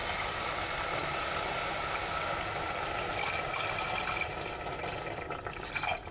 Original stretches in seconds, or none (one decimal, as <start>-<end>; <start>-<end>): 0.0-6.1